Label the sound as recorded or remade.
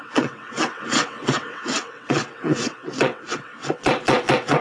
remade